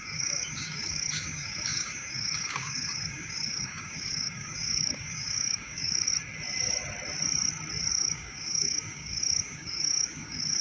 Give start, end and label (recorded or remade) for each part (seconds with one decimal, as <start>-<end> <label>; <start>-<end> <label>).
0.0-6.1 remade; 6.1-7.9 recorded; 7.9-10.6 remade